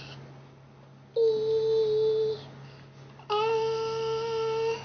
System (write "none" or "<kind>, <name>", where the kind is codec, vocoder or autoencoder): none